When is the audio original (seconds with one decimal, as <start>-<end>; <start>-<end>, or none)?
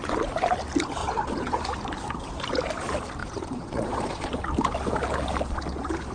0.0-1.0; 1.6-3.2; 4.3-6.1